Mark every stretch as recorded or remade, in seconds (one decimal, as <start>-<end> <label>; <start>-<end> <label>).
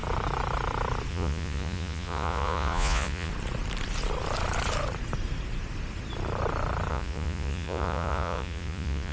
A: 0.0-1.1 recorded; 1.1-3.3 remade; 3.3-6.9 recorded; 6.9-9.1 remade